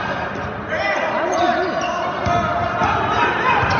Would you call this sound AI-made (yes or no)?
no